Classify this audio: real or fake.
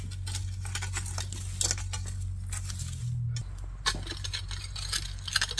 real